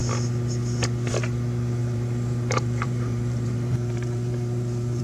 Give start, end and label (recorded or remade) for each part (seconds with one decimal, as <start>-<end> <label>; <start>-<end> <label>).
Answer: 0.0-1.8 recorded; 1.8-5.0 remade